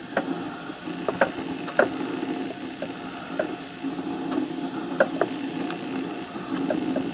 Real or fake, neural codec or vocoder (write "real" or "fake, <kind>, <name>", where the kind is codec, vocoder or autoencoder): real